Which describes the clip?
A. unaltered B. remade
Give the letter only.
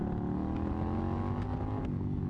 A